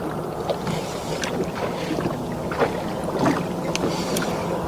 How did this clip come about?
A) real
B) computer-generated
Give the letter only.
A